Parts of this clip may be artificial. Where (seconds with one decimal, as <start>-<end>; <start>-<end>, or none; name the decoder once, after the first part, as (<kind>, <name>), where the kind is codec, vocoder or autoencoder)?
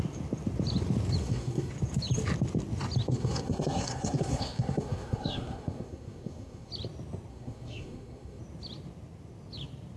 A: 1.2-1.7 (codec, SNAC); 3.1-6.7; 7.3-8.4